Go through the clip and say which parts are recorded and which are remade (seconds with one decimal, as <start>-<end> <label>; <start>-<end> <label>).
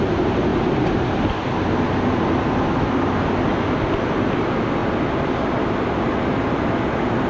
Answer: 0.0-0.5 recorded; 0.5-1.1 remade; 1.1-7.3 recorded